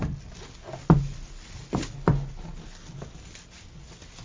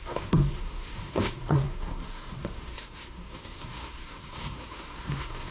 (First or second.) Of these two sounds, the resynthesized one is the second